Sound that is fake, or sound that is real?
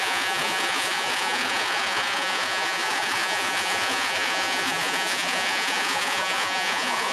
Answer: fake